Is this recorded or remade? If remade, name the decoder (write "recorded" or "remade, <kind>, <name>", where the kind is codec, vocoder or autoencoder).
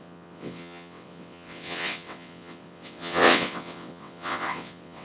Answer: remade, vocoder, WaveNeXt